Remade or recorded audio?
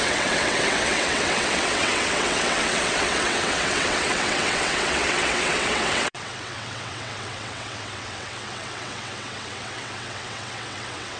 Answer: remade